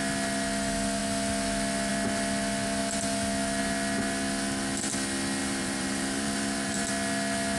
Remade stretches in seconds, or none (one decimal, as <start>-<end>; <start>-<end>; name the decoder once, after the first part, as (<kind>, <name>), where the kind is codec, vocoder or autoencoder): 5.4-6.9 (vocoder, BigVGAN v2)